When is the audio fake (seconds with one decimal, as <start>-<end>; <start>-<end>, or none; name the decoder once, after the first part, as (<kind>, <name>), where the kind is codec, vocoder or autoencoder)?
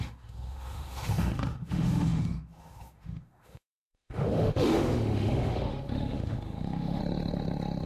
0.0-7.0 (autoencoder, DAC-VAE)